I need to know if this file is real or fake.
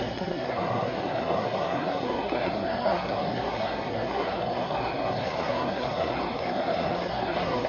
fake